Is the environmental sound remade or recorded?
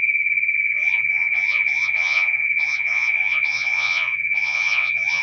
remade